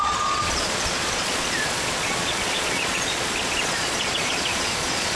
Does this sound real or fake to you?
fake